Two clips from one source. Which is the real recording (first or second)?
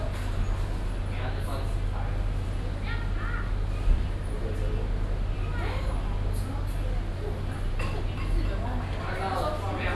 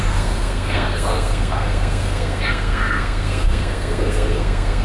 first